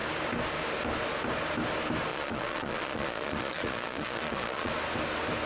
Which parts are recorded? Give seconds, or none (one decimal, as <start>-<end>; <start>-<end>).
0.0-2.1; 4.7-5.5